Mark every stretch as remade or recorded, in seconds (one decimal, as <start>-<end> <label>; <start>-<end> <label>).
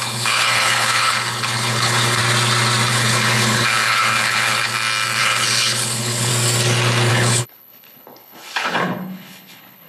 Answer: 0.0-2.2 remade; 2.2-2.9 recorded; 2.9-4.7 remade; 4.7-5.2 recorded; 5.2-6.3 remade; 6.3-7.1 recorded; 7.1-9.9 remade